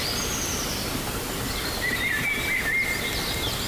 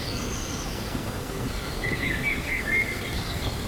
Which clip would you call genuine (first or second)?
first